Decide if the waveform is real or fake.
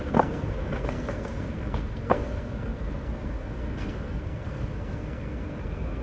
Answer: fake